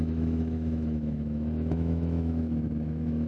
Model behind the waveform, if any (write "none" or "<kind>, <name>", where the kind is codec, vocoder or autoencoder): autoencoder, DAC-VAE